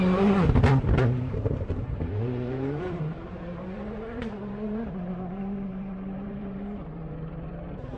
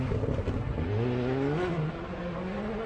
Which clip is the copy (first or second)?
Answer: first